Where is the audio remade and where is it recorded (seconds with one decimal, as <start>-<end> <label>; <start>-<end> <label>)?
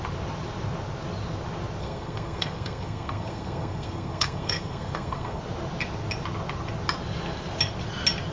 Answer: 0.0-1.8 recorded; 1.8-5.4 remade; 5.4-8.3 recorded